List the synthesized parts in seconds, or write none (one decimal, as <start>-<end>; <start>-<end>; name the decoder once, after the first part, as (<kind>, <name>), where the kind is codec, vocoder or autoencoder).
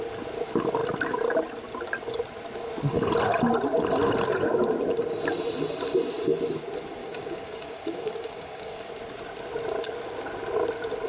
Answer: 7.0-8.9 (codec, DAC)